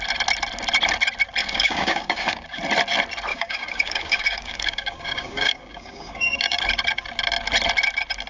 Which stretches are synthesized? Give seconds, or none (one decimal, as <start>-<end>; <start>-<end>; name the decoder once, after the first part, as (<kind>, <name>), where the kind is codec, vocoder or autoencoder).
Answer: 1.4-2.6 (codec, DAC); 3.3-6.6